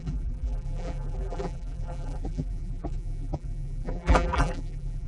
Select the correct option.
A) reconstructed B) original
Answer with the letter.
A